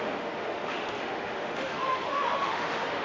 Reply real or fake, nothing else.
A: fake